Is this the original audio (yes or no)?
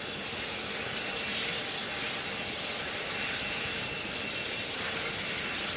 yes